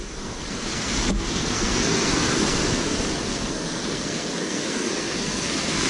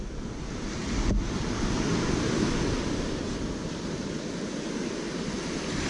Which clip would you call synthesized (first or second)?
first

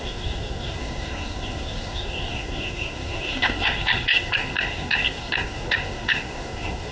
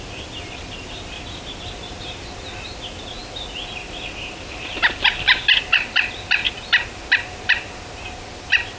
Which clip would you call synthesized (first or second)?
first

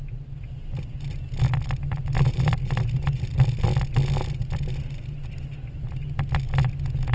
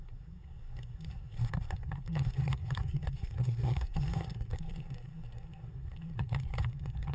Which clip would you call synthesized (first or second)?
second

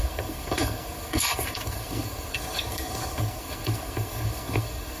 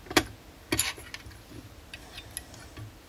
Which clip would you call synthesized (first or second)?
first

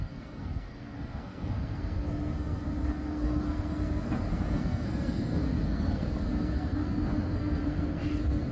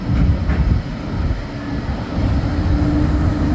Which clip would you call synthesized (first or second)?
first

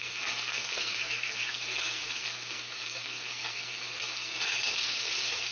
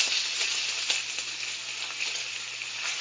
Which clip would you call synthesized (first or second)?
first